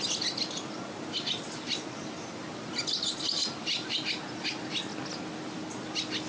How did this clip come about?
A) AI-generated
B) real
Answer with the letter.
B